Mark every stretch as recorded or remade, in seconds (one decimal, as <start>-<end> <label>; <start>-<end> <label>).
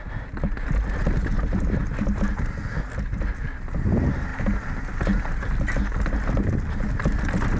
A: 0.0-7.6 recorded